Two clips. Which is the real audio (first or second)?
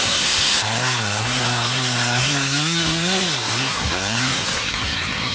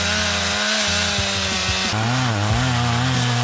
second